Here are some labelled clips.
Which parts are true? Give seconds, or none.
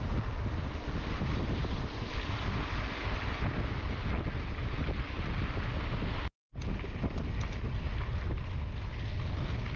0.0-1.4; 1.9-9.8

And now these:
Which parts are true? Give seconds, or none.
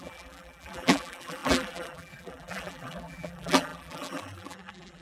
none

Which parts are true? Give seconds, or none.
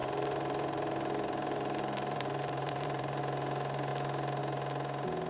3.2-5.3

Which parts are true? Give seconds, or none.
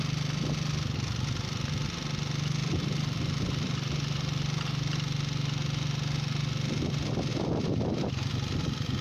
0.0-2.6; 4.3-7.3; 8.0-9.0